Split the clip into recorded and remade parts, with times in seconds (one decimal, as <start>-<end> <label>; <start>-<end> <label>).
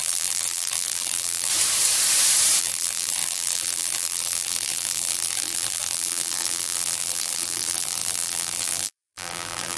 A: 0.0-1.5 remade; 1.5-2.6 recorded; 2.6-9.8 remade